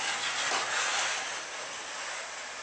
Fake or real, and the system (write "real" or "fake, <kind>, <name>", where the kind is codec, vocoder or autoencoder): real